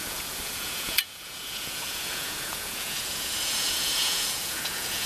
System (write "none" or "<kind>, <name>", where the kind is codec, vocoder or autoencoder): vocoder, Vocos